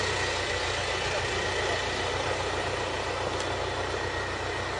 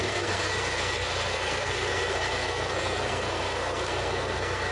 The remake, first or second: second